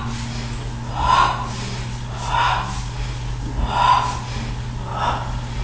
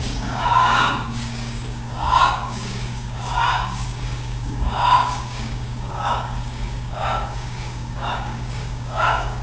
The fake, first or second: second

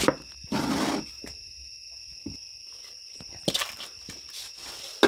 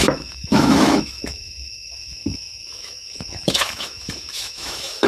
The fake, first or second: second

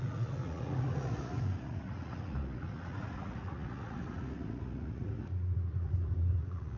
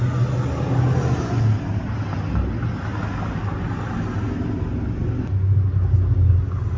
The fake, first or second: first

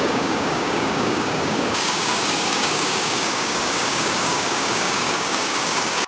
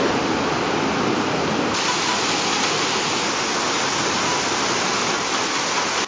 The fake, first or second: first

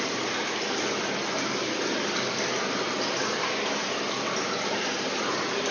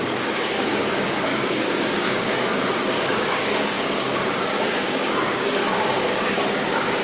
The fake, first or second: second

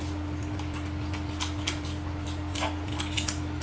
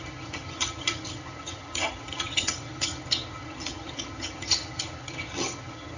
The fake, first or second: second